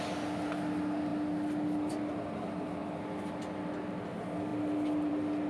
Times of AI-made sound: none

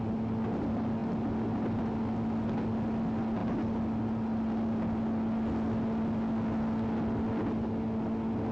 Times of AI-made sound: none

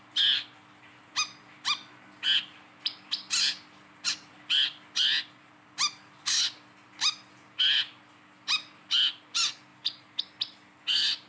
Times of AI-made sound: none

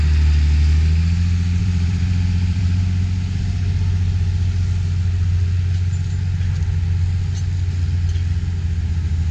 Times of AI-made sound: 1.6-2.8